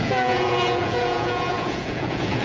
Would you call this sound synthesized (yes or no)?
yes